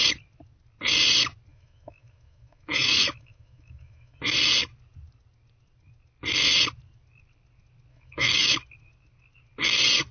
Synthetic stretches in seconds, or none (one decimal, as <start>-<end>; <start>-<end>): 1.5-4.2; 7.9-8.5